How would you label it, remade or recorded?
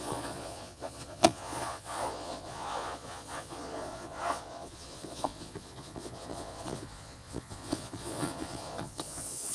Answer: remade